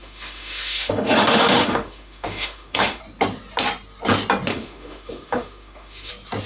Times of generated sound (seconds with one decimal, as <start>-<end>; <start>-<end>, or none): 0.0-3.0; 4.5-6.1